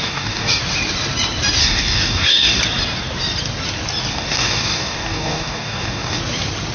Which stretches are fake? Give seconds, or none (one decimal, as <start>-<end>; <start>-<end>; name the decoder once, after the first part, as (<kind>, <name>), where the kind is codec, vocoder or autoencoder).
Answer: 0.0-0.6 (codec, DAC); 1.6-2.6; 4.1-6.2